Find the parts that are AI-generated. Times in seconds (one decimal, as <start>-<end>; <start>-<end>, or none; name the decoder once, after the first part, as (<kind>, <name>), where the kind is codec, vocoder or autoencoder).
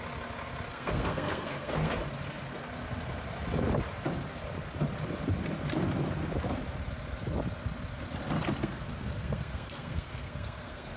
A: 0.7-1.9 (codec, SNAC); 8.6-11.0